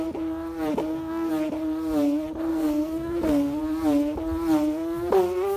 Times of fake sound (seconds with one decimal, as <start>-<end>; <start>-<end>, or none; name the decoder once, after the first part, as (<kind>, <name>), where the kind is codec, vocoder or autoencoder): 0.8-1.3 (codec, SNAC); 2.5-3.6